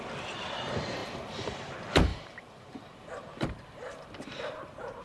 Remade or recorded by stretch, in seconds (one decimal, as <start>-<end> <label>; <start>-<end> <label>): 0.0-1.0 recorded; 1.0-1.7 remade; 1.7-2.1 recorded; 2.1-5.0 remade